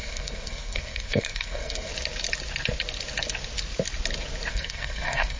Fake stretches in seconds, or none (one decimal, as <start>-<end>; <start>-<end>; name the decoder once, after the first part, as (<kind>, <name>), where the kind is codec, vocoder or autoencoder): 0.0-1.9 (codec, SNAC); 4.5-5.4